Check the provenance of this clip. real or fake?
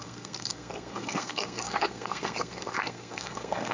fake